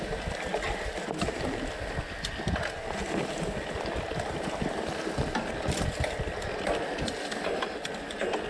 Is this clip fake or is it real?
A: real